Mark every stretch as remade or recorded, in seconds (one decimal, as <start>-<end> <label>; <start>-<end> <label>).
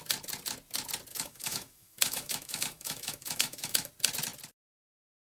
0.0-1.1 recorded; 1.1-3.9 remade; 3.9-5.2 recorded